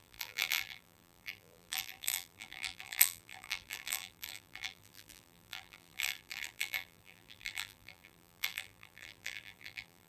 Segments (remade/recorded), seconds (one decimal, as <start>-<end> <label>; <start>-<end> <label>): 0.0-10.1 remade